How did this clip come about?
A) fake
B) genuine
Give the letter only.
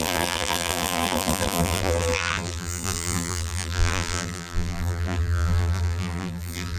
A